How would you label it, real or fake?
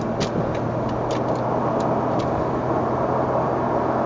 real